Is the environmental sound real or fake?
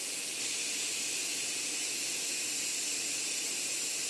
real